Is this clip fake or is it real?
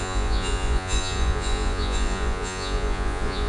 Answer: fake